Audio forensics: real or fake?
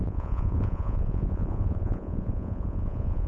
fake